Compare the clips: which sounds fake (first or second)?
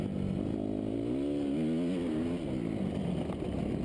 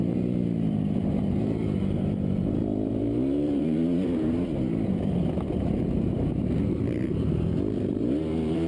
second